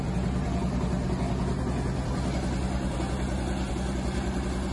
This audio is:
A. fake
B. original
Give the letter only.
B